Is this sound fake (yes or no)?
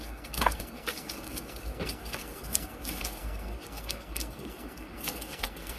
yes